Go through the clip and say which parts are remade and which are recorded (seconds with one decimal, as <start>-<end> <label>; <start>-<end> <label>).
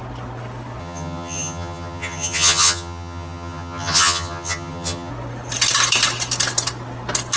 0.0-0.8 recorded; 0.8-5.1 remade; 5.1-7.4 recorded